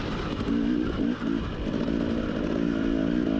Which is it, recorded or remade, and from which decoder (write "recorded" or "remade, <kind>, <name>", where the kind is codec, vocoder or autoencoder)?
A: recorded